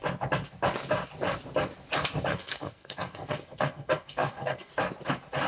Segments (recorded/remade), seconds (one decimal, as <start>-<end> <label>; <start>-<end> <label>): 0.0-2.3 recorded; 2.3-4.7 remade; 4.7-5.5 recorded